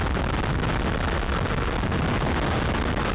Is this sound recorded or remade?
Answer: recorded